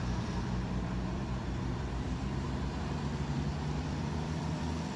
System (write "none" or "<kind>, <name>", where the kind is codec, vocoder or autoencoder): vocoder, BigVGAN v2